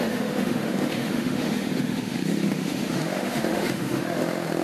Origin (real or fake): fake